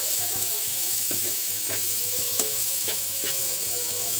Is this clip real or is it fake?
fake